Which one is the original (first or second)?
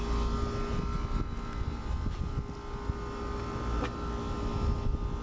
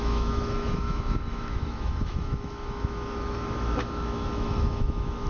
first